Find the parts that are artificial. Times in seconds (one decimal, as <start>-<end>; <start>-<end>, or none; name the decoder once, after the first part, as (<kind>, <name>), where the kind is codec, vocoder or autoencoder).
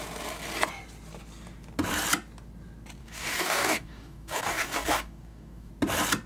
3.0-5.7 (codec, DAC)